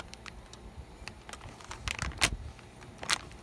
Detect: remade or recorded recorded